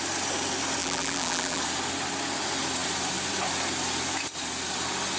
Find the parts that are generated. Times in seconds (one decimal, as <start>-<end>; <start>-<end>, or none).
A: 0.8-1.6